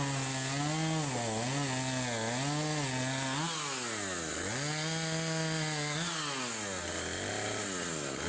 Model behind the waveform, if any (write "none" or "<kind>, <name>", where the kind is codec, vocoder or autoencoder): none